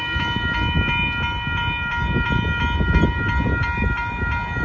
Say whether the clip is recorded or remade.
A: recorded